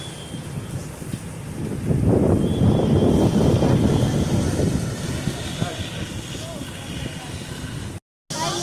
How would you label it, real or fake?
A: real